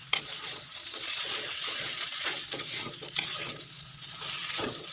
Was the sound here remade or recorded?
remade